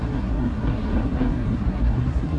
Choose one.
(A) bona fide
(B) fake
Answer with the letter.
B